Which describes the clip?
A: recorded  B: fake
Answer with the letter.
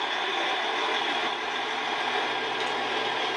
A